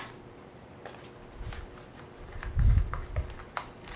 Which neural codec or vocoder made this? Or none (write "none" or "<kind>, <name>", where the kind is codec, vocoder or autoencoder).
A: none